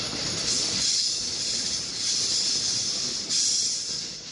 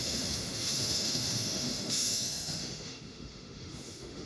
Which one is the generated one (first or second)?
second